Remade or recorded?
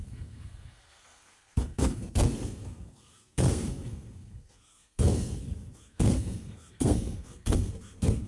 remade